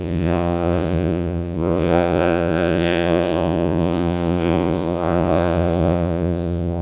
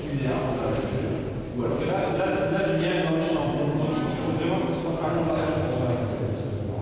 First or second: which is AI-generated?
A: first